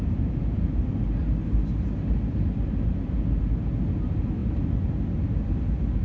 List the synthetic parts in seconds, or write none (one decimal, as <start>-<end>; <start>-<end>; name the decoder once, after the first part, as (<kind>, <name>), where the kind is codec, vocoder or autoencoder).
none